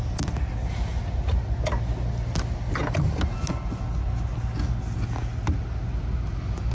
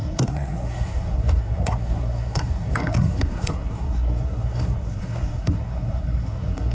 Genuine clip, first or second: first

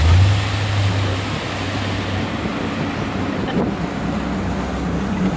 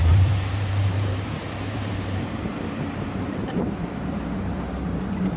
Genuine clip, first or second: first